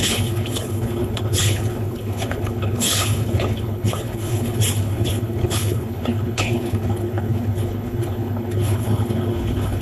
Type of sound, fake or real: fake